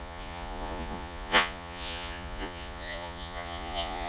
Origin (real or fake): fake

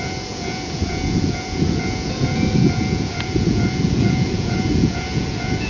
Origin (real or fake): fake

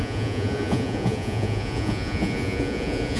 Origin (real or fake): fake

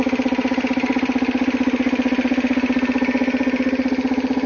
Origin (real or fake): real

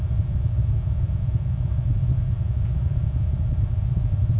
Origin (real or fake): real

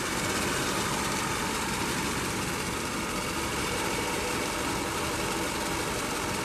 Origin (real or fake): real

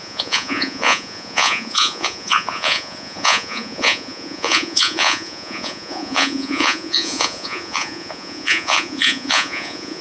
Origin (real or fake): fake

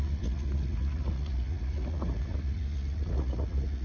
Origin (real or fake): fake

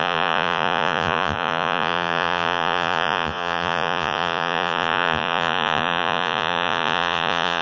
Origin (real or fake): fake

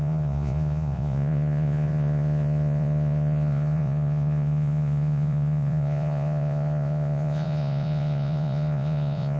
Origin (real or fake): fake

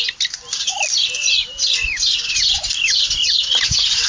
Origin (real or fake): real